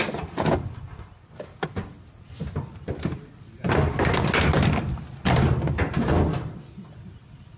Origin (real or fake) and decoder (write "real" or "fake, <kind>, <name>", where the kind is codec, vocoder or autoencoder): real